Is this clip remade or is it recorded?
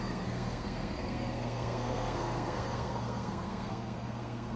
remade